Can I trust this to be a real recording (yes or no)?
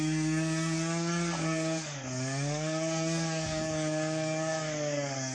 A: no